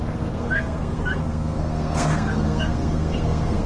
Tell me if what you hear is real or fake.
fake